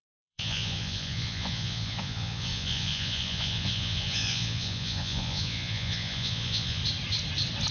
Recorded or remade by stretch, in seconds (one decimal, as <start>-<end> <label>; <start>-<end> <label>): 0.0-6.8 remade; 6.8-7.7 recorded